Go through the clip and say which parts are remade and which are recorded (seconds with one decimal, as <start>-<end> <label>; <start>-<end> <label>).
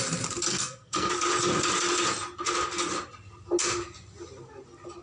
0.0-0.5 recorded; 0.5-1.1 remade; 1.1-5.0 recorded